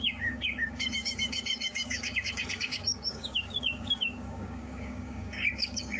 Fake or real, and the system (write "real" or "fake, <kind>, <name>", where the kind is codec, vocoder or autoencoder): fake, codec, DAC